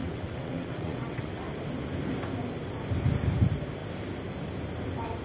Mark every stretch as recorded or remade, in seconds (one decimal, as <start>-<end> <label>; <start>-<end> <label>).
0.0-1.4 remade; 1.4-5.2 recorded